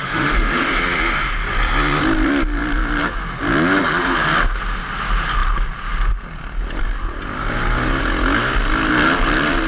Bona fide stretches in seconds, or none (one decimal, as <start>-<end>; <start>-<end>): 0.8-9.7